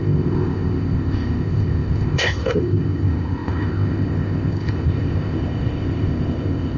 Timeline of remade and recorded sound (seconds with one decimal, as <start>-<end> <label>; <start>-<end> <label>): 0.0-6.8 remade